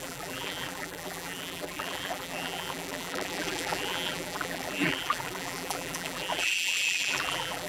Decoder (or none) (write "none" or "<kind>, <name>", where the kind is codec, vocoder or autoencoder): vocoder, BigVGAN v2